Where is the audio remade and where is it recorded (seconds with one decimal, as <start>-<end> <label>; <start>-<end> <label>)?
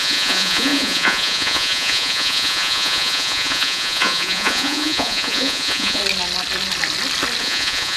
0.0-6.0 remade; 6.0-7.4 recorded; 7.4-8.0 remade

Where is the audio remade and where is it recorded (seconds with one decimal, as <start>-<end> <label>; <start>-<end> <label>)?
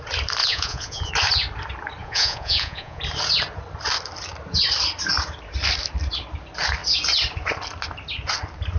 0.0-0.4 recorded; 0.4-1.1 remade; 1.1-2.0 recorded; 2.0-3.0 remade; 3.0-8.8 recorded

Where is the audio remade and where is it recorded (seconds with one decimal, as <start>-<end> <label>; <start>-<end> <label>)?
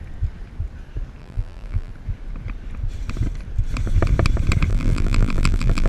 0.0-1.2 recorded; 1.2-1.9 remade; 1.9-4.7 recorded; 4.7-5.9 remade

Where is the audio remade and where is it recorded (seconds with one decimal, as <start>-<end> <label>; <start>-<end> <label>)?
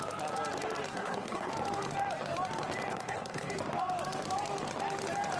0.0-0.9 recorded; 0.9-1.5 remade; 1.5-2.9 recorded; 2.9-3.5 remade; 3.5-5.4 recorded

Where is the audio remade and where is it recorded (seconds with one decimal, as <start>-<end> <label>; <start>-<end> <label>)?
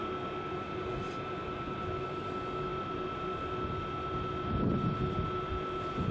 0.0-6.1 recorded